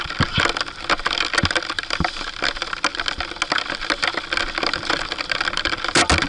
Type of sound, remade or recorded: recorded